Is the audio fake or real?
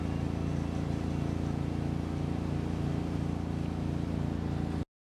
real